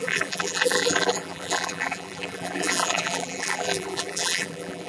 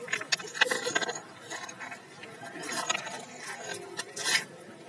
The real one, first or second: second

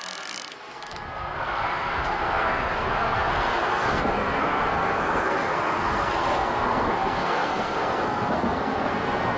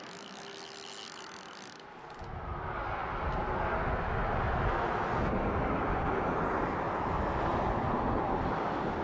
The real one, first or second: second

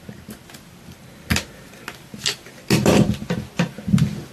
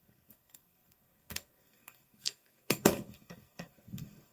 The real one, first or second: first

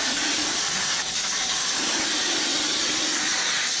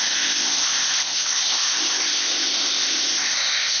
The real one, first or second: first